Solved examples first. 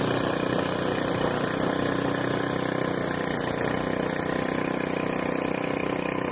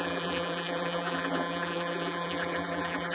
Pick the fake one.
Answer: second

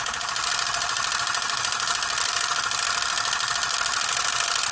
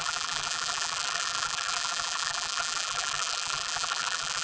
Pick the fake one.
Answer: second